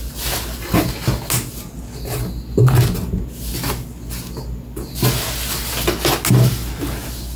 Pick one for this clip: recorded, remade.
recorded